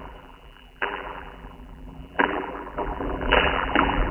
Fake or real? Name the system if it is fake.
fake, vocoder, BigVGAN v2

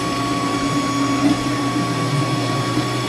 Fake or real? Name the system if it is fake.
fake, vocoder, BigVGAN v2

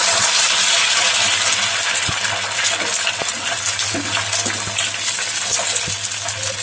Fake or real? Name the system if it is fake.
real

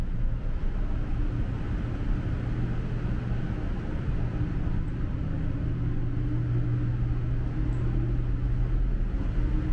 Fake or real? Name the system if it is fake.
real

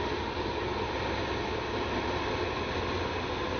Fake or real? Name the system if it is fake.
real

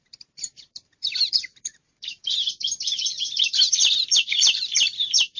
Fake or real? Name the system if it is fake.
fake, vocoder, BigVGAN v2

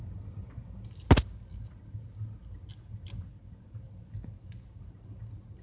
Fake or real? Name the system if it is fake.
real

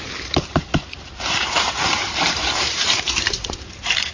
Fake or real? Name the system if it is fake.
fake, vocoder, BigVGAN v2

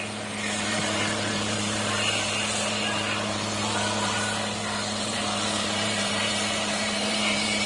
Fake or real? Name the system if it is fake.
fake, vocoder, BigVGAN v2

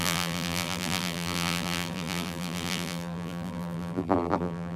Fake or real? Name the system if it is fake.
fake, vocoder, BigVGAN v2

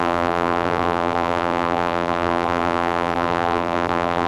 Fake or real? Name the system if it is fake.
fake, vocoder, BigVGAN v2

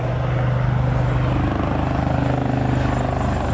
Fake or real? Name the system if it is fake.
real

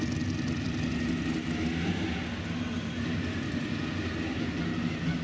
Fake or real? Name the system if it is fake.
real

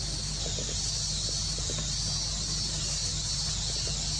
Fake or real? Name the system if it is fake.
real